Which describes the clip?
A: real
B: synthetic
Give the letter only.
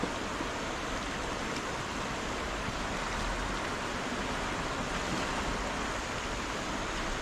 A